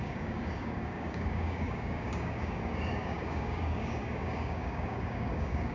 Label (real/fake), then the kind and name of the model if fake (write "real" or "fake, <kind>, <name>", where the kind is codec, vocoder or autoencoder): fake, codec, DAC